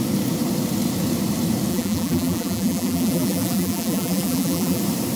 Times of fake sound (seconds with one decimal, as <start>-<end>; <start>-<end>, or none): 1.7-4.8